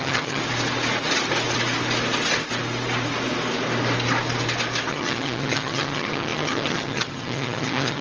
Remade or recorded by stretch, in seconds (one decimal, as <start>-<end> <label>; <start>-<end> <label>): 0.0-0.4 remade; 0.4-4.9 recorded; 4.9-8.0 remade